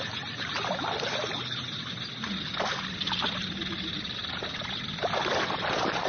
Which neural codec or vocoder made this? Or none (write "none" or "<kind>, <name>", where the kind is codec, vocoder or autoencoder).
none